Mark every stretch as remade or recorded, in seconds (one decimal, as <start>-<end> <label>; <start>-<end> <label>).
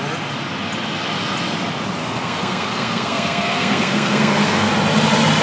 0.0-2.0 recorded; 2.0-4.7 remade; 4.7-5.4 recorded